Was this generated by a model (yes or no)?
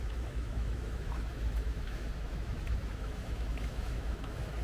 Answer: yes